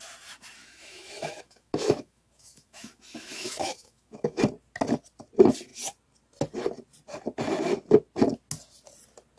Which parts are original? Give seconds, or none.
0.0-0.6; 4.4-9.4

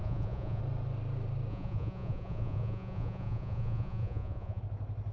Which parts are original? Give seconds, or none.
0.6-1.5; 4.6-5.1

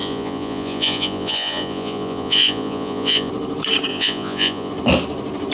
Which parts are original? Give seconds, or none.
3.3-3.9; 4.7-5.5

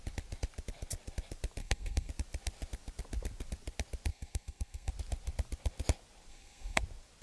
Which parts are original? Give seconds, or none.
0.0-1.6; 2.1-4.1; 4.9-6.3; 6.8-7.2

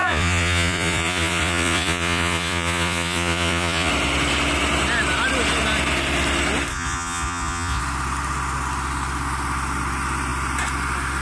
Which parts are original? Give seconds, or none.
3.9-6.7; 7.8-11.2

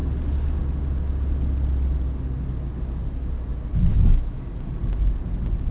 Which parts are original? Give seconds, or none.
0.0-3.9; 4.4-5.7

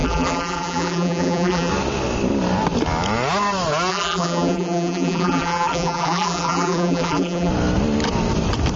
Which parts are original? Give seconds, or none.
1.7-3.9; 7.5-8.8

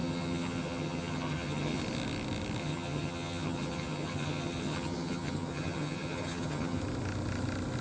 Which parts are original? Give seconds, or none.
1.8-2.6; 6.8-7.8